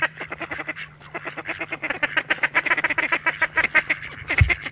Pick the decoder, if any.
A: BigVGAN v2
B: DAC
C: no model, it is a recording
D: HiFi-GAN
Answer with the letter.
A